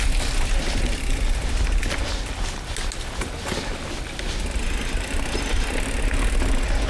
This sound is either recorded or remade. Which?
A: recorded